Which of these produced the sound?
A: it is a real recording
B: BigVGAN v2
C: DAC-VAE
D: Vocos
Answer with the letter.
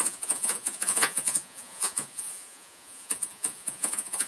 D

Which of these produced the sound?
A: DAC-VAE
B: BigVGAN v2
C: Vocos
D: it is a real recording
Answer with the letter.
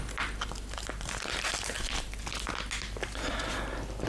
D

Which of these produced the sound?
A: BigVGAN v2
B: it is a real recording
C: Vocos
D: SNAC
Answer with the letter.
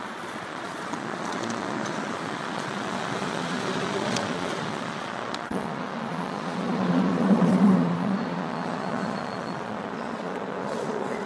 C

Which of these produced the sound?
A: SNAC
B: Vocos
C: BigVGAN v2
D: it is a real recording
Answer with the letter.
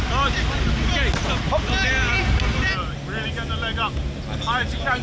D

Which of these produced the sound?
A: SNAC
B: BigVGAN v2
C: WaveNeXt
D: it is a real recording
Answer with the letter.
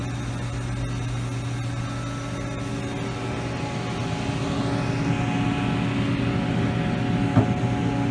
D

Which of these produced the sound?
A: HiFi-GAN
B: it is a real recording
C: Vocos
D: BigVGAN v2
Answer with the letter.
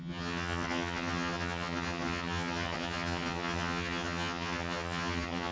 A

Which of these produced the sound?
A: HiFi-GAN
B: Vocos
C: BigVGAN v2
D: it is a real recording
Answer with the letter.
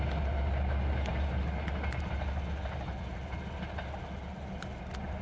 D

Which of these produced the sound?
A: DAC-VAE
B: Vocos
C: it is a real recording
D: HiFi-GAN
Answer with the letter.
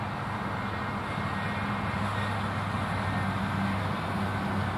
C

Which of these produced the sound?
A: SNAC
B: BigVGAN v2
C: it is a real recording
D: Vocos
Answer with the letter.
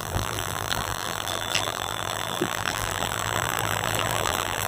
B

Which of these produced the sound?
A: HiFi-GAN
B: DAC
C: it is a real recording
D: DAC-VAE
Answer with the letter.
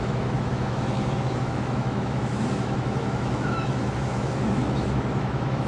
D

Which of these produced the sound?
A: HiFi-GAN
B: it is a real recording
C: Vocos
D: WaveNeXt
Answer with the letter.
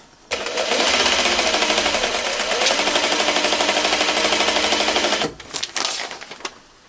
B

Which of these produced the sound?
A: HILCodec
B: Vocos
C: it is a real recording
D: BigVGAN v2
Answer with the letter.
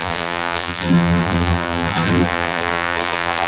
D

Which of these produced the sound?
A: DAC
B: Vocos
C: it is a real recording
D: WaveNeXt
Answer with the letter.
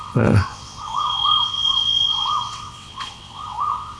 D